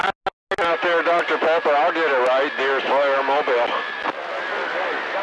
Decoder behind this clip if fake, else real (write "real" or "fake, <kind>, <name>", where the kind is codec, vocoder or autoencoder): real